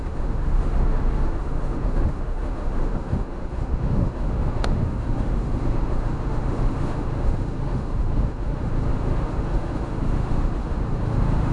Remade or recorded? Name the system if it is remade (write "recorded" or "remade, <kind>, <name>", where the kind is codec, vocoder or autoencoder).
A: remade, autoencoder, DAC-VAE